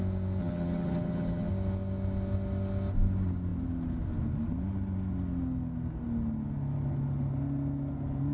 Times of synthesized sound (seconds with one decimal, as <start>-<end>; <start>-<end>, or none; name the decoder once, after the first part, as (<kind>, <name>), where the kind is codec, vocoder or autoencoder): 0.4-1.5 (vocoder, HiFi-GAN)